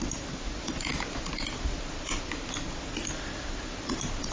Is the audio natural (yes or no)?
yes